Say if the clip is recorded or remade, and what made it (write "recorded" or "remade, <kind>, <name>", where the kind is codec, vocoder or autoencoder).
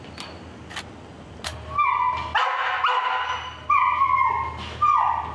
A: recorded